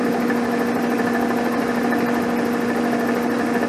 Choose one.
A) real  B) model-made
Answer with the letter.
A